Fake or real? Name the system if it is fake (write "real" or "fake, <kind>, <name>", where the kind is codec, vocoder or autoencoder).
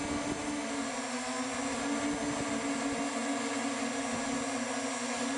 real